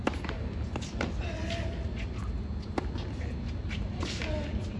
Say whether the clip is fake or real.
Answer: real